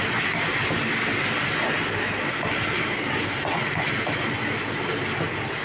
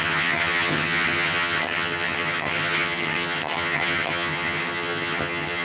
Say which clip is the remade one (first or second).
second